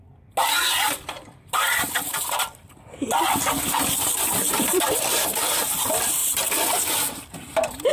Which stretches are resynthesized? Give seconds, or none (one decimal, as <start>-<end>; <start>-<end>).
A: 0.4-3.1